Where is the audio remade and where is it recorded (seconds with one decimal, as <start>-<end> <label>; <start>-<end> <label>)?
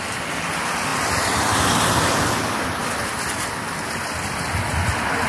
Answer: 0.0-5.3 recorded